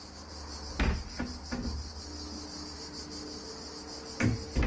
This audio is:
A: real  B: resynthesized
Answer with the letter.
A